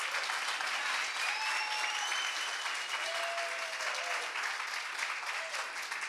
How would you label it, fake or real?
real